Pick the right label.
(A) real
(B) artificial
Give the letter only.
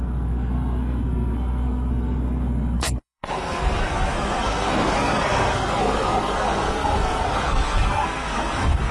B